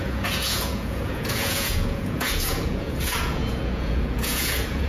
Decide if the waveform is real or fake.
fake